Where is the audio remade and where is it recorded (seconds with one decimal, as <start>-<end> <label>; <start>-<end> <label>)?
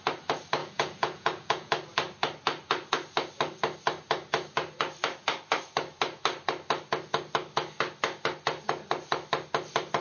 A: 0.0-0.6 recorded; 0.6-1.7 remade; 1.7-10.0 recorded